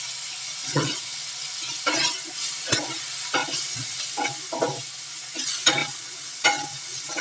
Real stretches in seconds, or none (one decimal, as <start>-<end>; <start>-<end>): 0.0-0.6; 1.2-3.4; 4.3-5.8